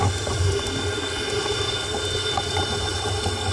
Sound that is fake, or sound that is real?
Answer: real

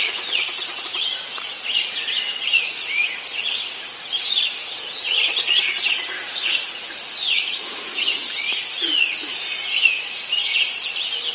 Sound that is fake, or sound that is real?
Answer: fake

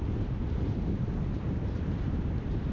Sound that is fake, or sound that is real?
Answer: fake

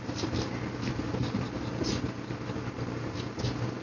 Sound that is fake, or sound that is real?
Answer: real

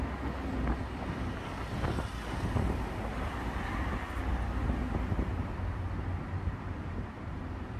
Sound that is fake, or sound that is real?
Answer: real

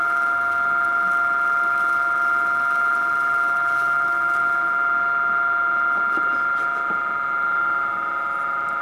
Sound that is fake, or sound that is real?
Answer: real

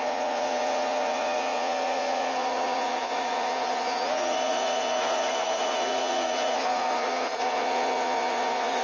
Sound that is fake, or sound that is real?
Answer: fake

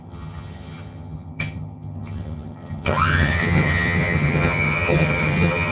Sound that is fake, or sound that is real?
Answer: fake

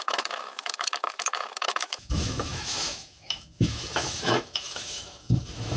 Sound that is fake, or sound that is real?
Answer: fake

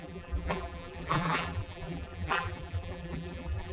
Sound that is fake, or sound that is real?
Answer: fake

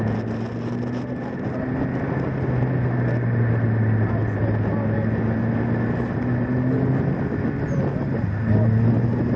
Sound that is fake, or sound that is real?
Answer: real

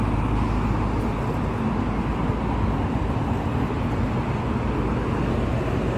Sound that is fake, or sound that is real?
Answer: real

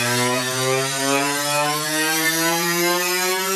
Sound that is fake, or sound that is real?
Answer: fake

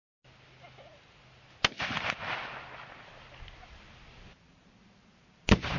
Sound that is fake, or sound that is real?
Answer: real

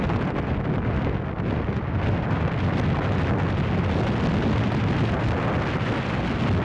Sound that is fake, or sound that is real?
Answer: real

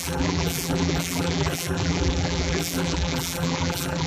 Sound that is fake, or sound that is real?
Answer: fake